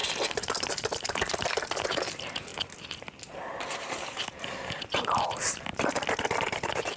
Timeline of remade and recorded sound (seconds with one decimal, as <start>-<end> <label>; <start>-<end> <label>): 0.0-2.5 remade; 2.5-4.8 recorded; 4.8-7.0 remade